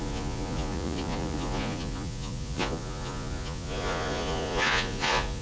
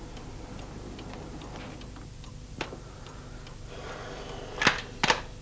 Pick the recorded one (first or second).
second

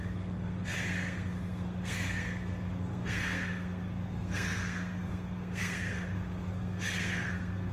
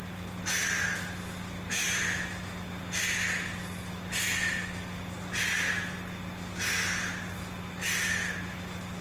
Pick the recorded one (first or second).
second